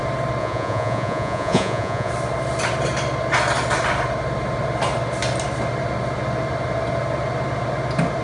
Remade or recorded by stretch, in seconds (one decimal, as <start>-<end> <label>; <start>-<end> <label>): 0.0-0.4 recorded; 0.4-2.1 remade; 2.1-8.2 recorded